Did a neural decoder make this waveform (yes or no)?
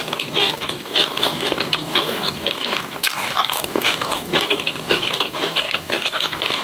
yes